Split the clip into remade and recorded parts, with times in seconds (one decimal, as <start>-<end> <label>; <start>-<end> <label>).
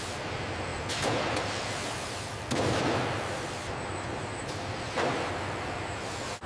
0.0-6.5 recorded